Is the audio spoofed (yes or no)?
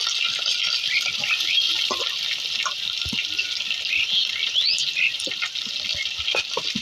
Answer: no